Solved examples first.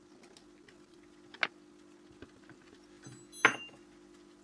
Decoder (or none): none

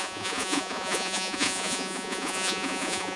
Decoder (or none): vocoder, Vocos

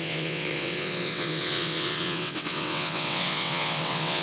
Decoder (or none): vocoder, WaveNeXt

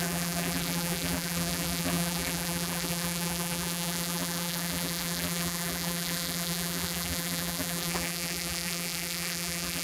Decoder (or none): vocoder, BigVGAN v2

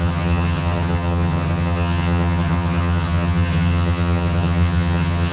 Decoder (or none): vocoder, HiFi-GAN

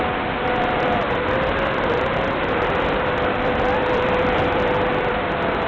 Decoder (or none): vocoder, BigVGAN v2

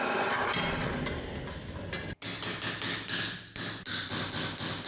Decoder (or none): none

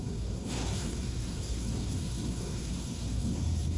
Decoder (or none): codec, SNAC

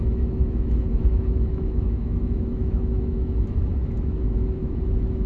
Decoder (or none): autoencoder, DAC-VAE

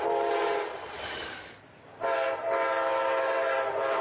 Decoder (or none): none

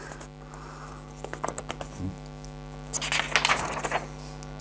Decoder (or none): none